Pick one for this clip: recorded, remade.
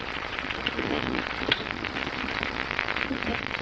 remade